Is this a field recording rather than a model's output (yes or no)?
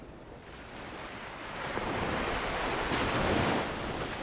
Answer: yes